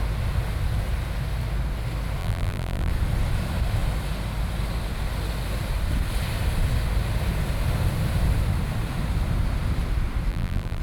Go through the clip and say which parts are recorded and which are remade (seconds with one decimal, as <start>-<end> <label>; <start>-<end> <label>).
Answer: 0.0-2.2 recorded; 2.2-2.9 remade; 2.9-10.3 recorded; 10.3-10.8 remade